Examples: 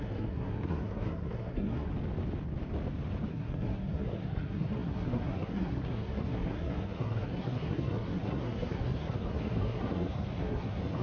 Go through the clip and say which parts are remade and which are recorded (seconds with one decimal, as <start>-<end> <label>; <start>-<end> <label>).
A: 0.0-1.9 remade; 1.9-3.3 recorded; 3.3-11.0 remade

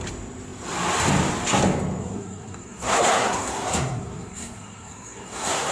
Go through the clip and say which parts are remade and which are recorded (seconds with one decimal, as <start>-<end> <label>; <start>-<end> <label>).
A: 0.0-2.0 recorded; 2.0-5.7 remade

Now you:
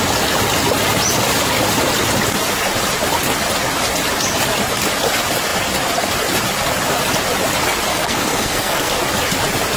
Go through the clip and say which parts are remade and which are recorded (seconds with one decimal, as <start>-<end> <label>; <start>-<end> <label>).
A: 0.0-7.9 recorded; 7.9-8.9 remade; 8.9-9.8 recorded